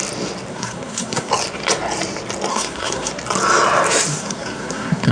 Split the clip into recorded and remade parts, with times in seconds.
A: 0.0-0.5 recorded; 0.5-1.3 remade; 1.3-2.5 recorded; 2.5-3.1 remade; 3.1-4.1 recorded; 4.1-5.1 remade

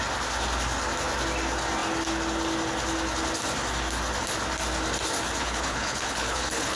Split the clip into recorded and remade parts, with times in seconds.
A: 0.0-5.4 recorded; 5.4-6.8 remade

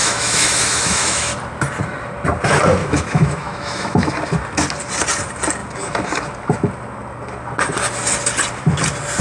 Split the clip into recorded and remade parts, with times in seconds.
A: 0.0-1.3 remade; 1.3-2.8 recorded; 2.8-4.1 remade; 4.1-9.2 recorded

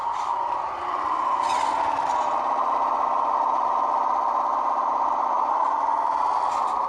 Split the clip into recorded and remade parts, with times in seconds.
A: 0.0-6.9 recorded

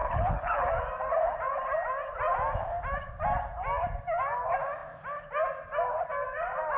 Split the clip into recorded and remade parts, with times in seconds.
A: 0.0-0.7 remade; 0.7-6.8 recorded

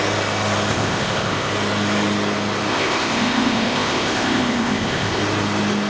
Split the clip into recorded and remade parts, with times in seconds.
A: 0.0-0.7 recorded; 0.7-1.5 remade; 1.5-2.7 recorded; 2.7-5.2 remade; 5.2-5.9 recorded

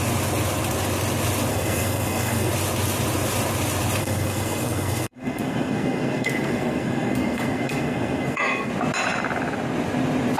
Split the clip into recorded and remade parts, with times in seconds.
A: 0.0-1.5 recorded; 1.5-2.5 remade; 2.5-4.0 recorded; 4.0-8.7 remade; 8.7-10.4 recorded

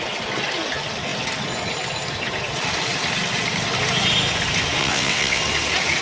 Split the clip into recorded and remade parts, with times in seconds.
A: 0.0-4.8 recorded; 4.8-5.4 remade; 5.4-6.0 recorded